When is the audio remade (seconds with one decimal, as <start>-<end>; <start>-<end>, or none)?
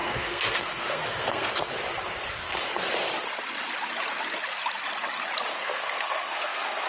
0.0-1.5; 5.5-6.9